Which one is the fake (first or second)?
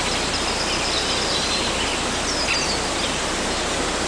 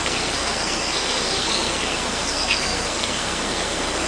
second